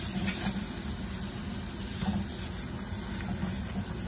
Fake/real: real